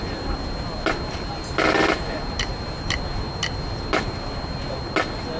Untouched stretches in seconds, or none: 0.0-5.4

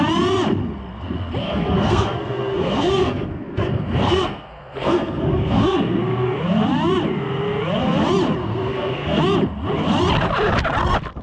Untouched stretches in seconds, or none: 0.0-1.4; 6.4-8.4; 9.2-11.2

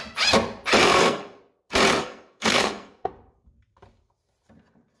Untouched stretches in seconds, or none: 0.0-0.8; 1.4-2.0; 3.1-5.0

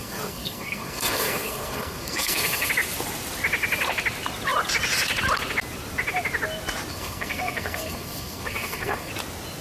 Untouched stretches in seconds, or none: 2.7-6.9; 9.1-9.6

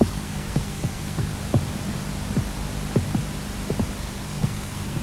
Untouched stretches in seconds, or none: 1.3-4.0

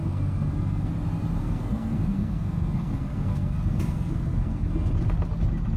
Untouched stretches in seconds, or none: 0.9-1.4; 4.9-5.8